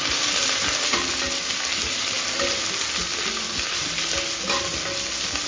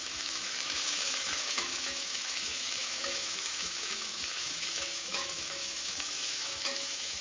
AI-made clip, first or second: second